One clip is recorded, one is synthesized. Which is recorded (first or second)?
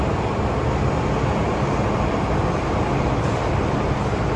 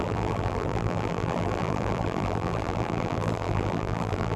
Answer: first